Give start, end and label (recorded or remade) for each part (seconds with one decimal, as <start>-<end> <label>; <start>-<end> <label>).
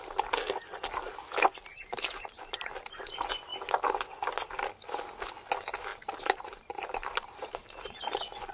0.0-1.7 recorded; 1.7-3.0 remade; 3.0-5.9 recorded; 5.9-8.0 remade; 8.0-8.5 recorded